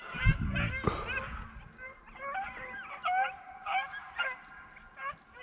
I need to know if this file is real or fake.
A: real